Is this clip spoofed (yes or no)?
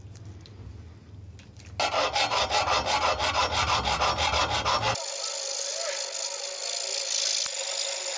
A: no